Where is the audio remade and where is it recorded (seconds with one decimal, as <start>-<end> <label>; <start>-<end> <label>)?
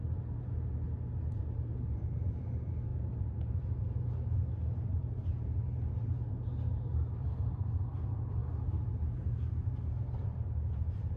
0.0-1.3 recorded; 1.3-11.2 remade